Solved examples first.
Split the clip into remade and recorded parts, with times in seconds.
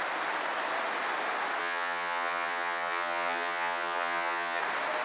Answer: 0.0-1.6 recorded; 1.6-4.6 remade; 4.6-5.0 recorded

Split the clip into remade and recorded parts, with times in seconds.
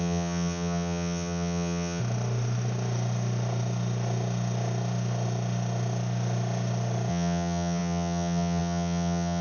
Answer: 0.0-2.0 remade; 2.0-7.1 recorded; 7.1-9.4 remade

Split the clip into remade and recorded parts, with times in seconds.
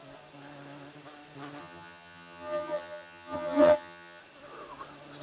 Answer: 0.0-1.6 recorded; 1.6-4.2 remade; 4.2-5.2 recorded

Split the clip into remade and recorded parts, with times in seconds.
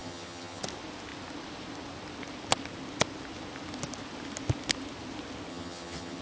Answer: 0.0-0.6 remade; 0.6-5.5 recorded; 5.5-6.2 remade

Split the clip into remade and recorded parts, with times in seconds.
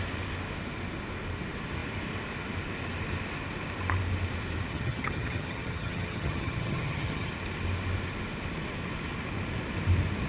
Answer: 0.0-4.7 recorded; 4.7-7.3 remade; 7.3-10.3 recorded